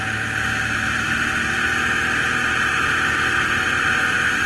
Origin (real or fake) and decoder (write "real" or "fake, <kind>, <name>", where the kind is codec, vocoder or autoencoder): real